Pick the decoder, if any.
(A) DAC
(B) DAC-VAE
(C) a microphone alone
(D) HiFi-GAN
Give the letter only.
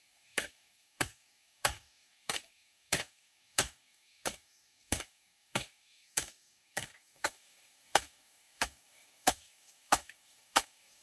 A